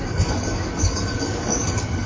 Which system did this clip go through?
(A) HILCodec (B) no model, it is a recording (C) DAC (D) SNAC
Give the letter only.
C